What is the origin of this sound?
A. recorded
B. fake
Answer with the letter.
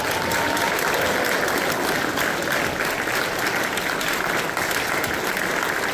A